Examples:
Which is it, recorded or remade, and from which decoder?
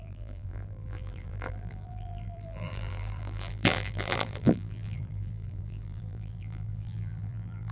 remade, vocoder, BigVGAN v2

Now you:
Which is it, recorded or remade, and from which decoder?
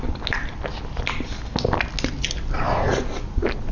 recorded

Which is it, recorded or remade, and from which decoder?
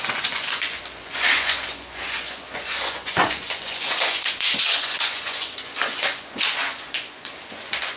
remade, vocoder, Vocos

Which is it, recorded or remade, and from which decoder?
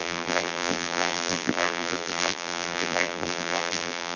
remade, vocoder, BigVGAN v2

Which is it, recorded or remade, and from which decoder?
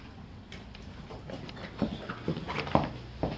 recorded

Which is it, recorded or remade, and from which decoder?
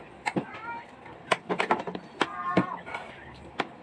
recorded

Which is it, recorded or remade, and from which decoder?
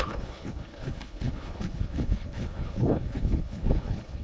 remade, codec, HILCodec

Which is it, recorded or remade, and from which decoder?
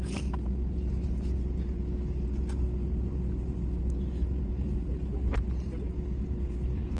recorded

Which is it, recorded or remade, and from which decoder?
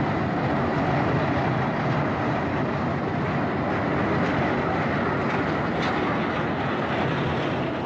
recorded